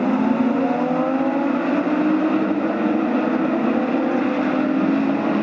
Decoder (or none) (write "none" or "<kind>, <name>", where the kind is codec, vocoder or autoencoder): none